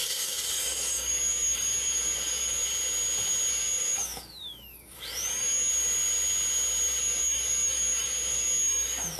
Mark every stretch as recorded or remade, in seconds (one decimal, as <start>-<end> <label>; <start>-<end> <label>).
0.0-2.6 remade; 2.6-3.5 recorded; 3.5-5.7 remade; 5.7-7.0 recorded; 7.0-9.2 remade